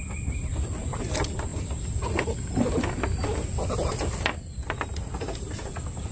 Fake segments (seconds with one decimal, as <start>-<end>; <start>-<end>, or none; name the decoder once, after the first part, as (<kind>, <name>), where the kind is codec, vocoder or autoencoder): none